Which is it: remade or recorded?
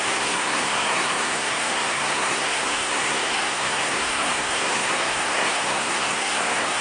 remade